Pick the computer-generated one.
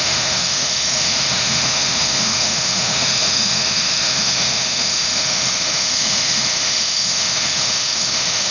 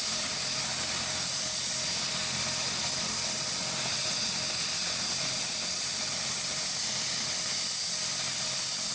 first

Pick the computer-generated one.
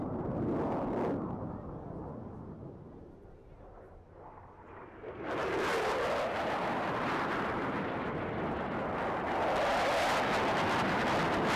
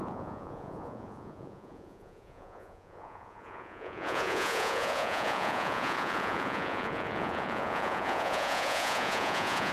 second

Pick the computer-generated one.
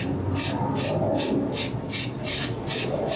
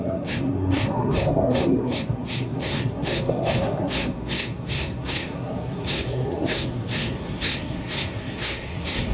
second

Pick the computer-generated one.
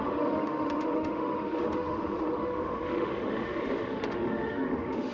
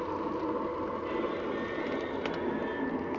first